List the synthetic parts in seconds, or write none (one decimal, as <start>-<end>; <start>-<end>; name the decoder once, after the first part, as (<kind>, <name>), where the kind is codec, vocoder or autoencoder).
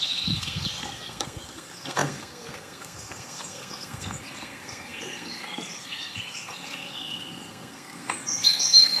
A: 0.0-9.0 (codec, SNAC)